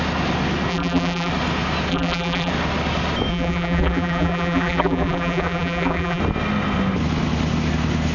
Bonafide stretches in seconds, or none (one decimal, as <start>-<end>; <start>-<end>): 0.0-0.7; 1.3-1.9; 2.5-3.3; 6.2-8.1